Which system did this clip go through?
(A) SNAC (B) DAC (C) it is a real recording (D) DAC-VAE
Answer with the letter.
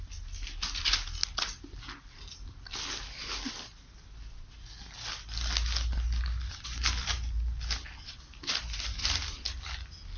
C